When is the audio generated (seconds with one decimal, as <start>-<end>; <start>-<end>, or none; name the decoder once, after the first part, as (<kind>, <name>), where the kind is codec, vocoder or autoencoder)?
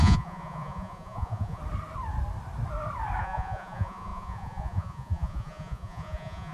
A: 0.0-1.6 (vocoder, Vocos); 3.2-6.5